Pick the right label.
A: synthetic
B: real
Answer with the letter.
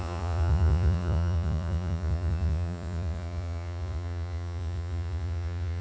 A